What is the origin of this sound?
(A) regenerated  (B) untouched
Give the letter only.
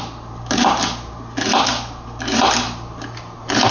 B